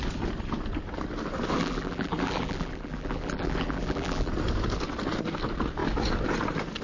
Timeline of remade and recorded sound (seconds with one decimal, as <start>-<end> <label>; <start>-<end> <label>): 0.0-1.6 recorded; 1.6-4.3 remade; 4.3-6.8 recorded